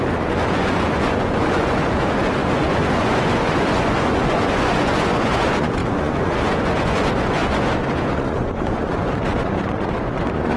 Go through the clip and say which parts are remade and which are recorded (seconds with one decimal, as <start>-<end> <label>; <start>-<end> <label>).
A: 0.0-10.6 remade